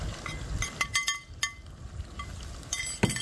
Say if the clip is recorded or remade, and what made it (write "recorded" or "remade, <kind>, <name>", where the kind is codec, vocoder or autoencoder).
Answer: recorded